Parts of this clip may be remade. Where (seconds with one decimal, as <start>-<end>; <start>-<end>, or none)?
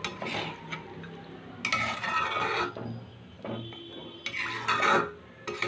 none